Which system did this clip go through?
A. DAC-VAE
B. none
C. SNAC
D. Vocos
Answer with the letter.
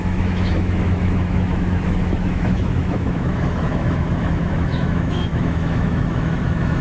A